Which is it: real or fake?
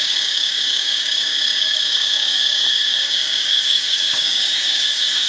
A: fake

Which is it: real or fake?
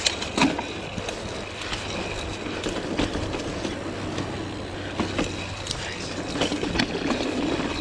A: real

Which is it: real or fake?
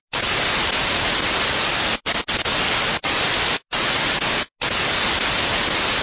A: real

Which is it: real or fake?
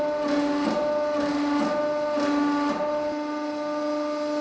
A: real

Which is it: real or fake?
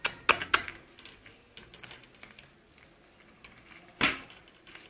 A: real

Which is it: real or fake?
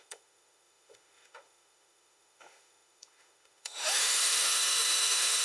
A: fake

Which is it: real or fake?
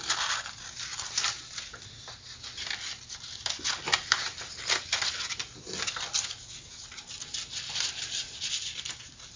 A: real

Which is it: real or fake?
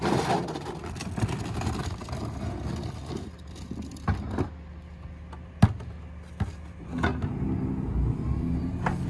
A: real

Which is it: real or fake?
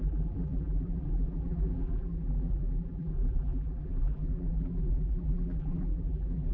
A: fake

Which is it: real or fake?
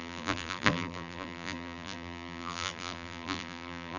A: fake